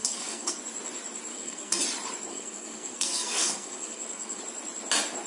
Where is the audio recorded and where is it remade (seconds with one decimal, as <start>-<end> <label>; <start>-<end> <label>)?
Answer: 0.0-0.6 remade; 0.6-1.3 recorded; 1.3-1.8 remade; 1.8-2.3 recorded; 2.3-4.4 remade; 4.4-5.3 recorded

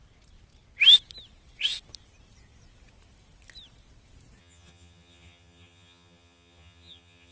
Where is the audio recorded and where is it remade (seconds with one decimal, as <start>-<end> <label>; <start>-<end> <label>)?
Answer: 0.0-4.4 recorded; 4.4-7.3 remade

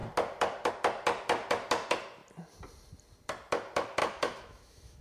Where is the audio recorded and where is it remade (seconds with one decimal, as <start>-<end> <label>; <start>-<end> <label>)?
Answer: 0.0-4.0 recorded; 4.0-5.0 remade

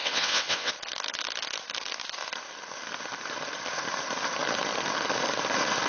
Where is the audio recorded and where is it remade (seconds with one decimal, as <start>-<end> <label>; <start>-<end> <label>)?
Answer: 0.0-0.7 remade; 0.7-5.9 recorded